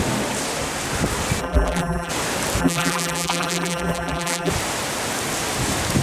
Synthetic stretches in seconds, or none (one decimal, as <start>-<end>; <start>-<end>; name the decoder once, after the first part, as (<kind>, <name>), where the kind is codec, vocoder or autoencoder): 1.4-2.1 (vocoder, BigVGAN v2); 2.6-4.5